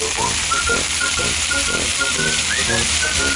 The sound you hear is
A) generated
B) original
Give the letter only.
B